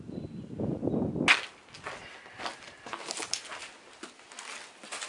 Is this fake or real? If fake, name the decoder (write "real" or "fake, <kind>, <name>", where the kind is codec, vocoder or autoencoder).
real